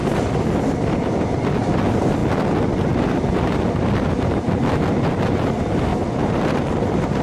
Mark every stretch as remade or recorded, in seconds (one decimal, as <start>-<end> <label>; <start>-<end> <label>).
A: 0.0-7.2 recorded